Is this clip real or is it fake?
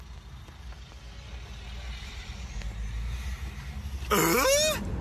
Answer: real